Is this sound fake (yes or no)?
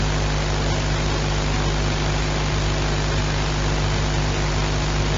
no